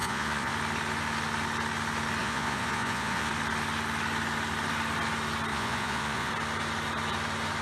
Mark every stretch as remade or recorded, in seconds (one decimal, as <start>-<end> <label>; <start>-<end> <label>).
0.0-0.5 remade; 0.5-2.2 recorded; 2.2-3.3 remade; 3.3-5.5 recorded; 5.5-6.3 remade; 6.3-7.6 recorded